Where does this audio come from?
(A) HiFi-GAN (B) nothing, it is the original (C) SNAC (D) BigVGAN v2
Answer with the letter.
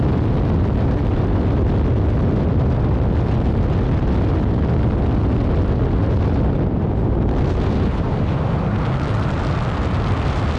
B